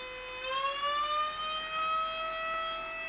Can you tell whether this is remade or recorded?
recorded